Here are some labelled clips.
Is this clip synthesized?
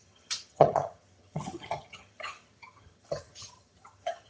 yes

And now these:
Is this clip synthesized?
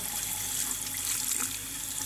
no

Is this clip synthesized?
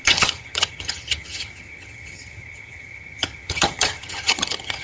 yes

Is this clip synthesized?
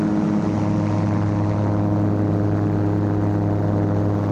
no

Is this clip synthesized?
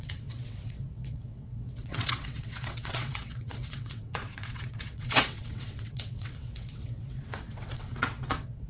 yes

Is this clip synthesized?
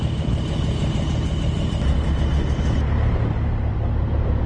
no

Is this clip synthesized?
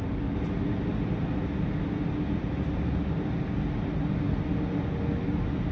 no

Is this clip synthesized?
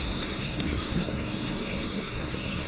yes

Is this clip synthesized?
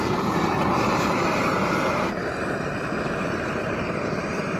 yes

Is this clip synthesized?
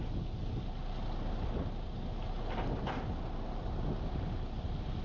no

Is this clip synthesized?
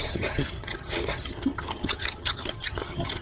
yes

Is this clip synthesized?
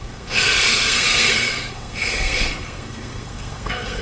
yes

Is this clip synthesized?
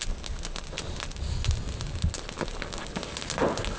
no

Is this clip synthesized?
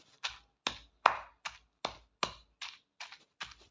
no